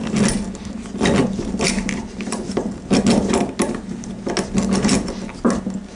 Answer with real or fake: real